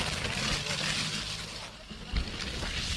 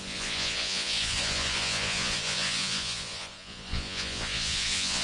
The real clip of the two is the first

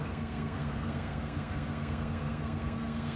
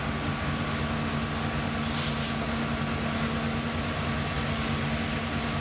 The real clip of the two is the second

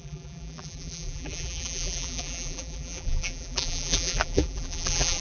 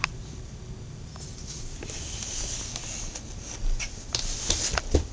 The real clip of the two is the second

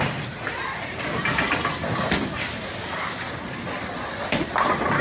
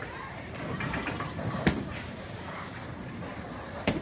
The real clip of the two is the first